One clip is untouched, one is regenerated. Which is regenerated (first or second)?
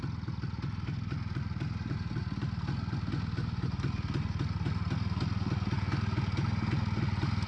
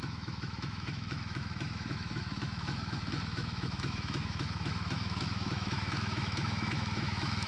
second